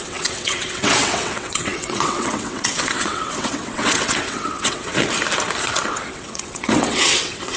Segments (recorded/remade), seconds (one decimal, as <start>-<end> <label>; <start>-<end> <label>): 0.0-4.9 remade; 4.9-5.6 recorded; 5.6-7.6 remade